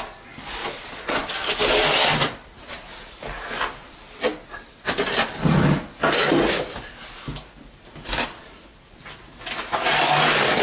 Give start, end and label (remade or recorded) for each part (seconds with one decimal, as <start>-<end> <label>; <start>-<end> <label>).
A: 0.0-0.6 recorded; 0.6-1.3 remade; 1.3-10.6 recorded